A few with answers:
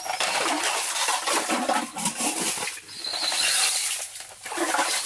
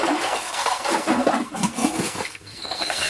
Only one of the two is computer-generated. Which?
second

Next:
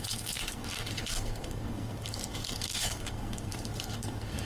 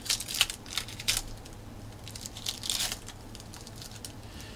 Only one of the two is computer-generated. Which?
first